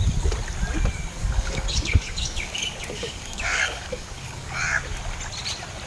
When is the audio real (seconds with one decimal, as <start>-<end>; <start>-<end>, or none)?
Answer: 0.0-1.2; 4.6-5.9